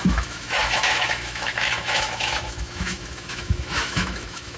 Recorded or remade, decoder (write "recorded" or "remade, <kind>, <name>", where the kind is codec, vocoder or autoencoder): remade, autoencoder, DAC-VAE